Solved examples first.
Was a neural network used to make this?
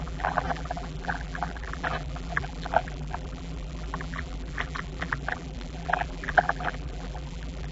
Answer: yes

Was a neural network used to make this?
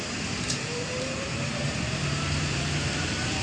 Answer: yes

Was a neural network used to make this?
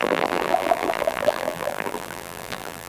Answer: yes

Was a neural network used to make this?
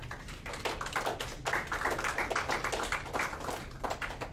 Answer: no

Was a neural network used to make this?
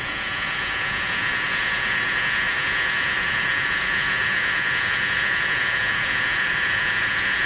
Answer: yes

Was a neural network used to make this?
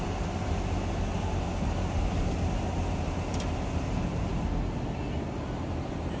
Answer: no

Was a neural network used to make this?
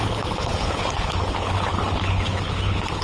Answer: yes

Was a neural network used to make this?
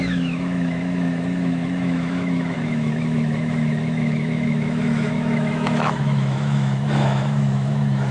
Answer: yes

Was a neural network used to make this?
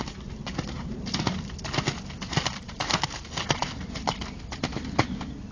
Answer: no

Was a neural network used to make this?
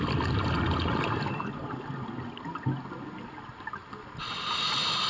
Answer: no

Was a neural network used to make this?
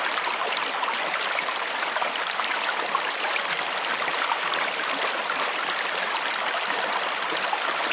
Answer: no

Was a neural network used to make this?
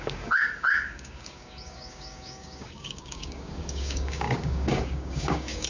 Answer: yes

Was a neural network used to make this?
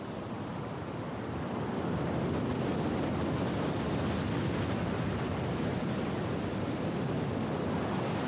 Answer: no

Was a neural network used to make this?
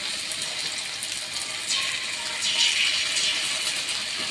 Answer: yes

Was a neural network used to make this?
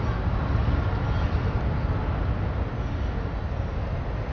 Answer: no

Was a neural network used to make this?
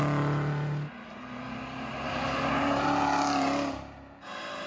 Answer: no